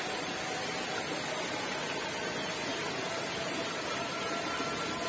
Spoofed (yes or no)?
no